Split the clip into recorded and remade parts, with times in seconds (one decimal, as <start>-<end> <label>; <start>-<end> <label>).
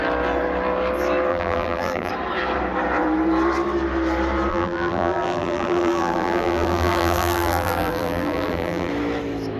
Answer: 0.0-1.3 recorded; 1.3-2.1 remade; 2.1-4.5 recorded; 4.5-8.9 remade; 8.9-9.6 recorded